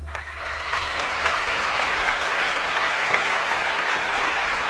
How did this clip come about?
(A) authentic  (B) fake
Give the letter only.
B